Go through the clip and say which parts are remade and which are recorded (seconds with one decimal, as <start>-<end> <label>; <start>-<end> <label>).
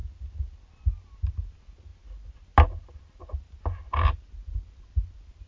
0.0-5.5 recorded